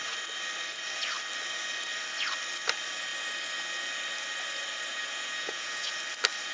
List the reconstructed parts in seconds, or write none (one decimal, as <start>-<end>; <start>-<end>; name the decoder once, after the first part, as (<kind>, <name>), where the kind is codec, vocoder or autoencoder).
4.9-5.9 (vocoder, Vocos)